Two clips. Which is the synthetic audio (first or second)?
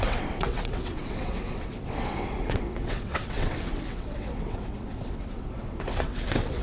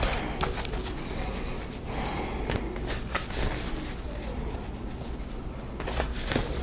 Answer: first